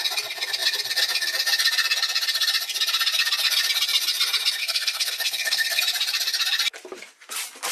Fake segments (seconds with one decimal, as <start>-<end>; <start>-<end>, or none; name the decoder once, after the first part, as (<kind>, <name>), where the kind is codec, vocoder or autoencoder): 4.6-5.8 (codec, SNAC)